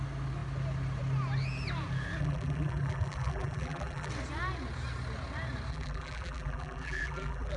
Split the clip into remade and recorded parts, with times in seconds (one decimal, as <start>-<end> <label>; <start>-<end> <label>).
0.0-2.2 recorded; 2.2-4.1 remade; 4.1-5.7 recorded; 5.7-7.6 remade